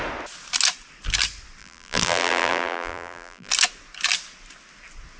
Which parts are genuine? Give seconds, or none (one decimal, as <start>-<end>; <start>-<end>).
0.0-1.6; 3.5-5.2